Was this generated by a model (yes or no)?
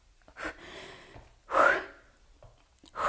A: no